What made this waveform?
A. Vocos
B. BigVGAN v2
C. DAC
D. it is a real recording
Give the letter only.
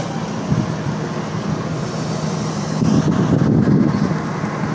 D